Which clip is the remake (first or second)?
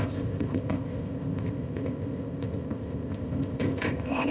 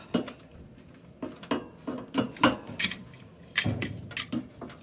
first